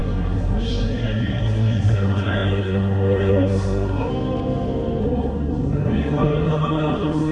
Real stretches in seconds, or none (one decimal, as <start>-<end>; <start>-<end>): 4.1-5.0